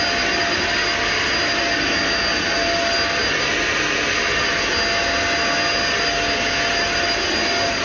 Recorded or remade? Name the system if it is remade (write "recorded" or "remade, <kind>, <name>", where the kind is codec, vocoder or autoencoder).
recorded